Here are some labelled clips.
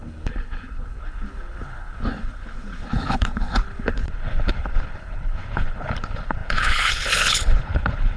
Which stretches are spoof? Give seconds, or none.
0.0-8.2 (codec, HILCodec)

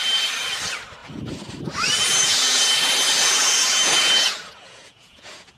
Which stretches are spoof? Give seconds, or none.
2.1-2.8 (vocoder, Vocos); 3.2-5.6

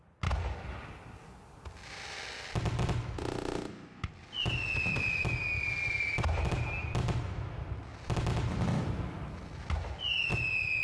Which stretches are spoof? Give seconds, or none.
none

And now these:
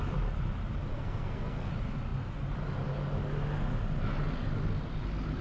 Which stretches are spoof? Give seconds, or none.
0.9-1.7 (codec, SNAC)

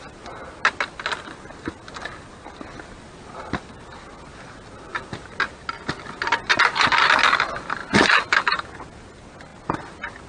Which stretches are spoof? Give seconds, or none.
4.9-5.4 (vocoder, BigVGAN v2)

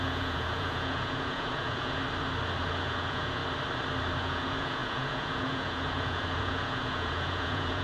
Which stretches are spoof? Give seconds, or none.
0.0-2.0 (vocoder, Vocos); 2.6-3.4; 4.2-7.8

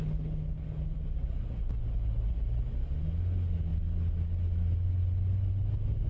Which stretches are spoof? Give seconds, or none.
none

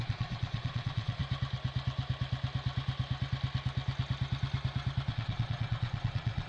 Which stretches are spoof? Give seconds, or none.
0.0-1.2 (vocoder, Vocos); 5.1-6.5